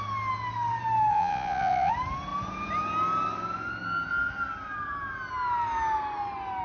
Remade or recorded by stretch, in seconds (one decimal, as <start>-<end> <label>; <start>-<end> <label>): 0.0-1.1 recorded; 1.1-1.9 remade; 1.9-6.6 recorded